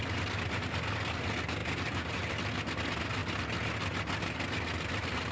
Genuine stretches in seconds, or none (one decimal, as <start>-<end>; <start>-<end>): 0.0-1.6; 2.3-5.3